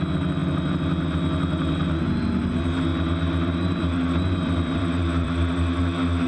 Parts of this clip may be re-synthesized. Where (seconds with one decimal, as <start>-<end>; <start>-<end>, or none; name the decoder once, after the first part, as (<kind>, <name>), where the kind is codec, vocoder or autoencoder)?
2.9-5.8 (vocoder, BigVGAN v2)